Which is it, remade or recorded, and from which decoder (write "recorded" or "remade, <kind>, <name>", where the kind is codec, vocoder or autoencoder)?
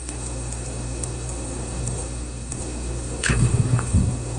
remade, codec, SNAC